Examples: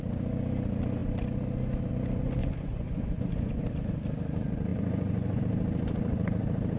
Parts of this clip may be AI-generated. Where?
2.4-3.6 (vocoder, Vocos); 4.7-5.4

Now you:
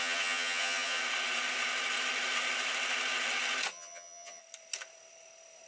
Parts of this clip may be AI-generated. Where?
0.0-1.0 (vocoder, HiFi-GAN); 3.7-4.4